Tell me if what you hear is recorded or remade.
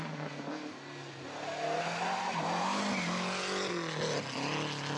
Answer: recorded